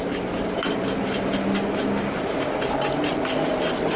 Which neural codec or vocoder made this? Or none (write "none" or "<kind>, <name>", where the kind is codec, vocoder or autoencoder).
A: none